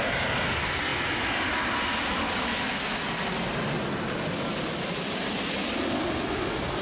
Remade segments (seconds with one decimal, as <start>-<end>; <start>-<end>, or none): none